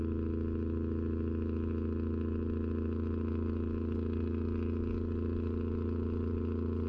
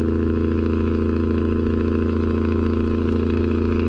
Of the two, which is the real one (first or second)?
first